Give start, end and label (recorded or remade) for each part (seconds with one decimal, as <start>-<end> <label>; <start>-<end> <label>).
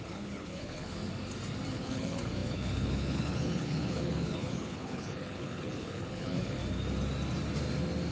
0.0-1.0 remade; 1.0-1.7 recorded; 1.7-6.6 remade; 6.6-8.1 recorded